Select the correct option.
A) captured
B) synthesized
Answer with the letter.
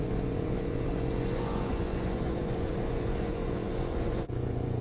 B